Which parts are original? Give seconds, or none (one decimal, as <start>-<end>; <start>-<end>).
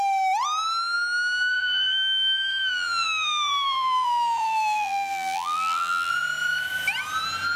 0.0-1.5; 6.1-7.6